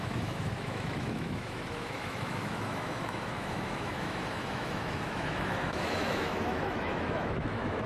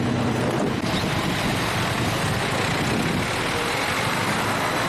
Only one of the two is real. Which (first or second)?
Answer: second